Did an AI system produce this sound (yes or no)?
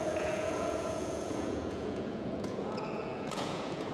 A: yes